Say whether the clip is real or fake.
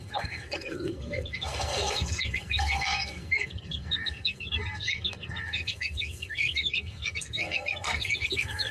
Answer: fake